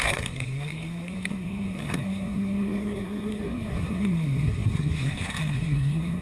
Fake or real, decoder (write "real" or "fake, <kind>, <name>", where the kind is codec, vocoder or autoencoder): fake, codec, SNAC